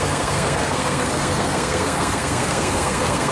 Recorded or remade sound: remade